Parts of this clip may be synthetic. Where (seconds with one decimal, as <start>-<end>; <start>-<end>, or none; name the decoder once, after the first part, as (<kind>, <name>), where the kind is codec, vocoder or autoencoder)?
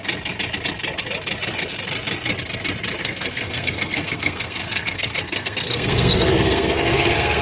3.0-7.4 (codec, SNAC)